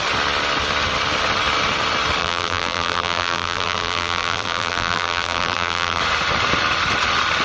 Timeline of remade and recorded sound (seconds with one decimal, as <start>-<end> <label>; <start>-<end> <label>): 0.0-2.2 recorded; 2.2-6.0 remade; 6.0-7.4 recorded